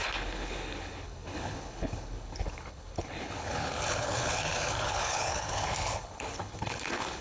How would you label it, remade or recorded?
remade